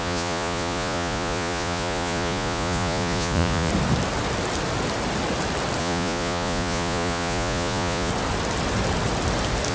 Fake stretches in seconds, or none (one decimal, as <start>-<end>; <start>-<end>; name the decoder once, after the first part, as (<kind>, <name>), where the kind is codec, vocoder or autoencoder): 0.0-3.7 (vocoder, Vocos); 5.8-8.1